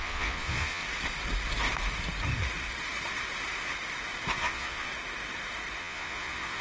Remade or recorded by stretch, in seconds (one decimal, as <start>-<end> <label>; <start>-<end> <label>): 0.0-0.8 remade; 0.8-4.4 recorded; 4.4-4.9 remade; 4.9-5.8 recorded; 5.8-6.6 remade